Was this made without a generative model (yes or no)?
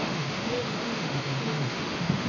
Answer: no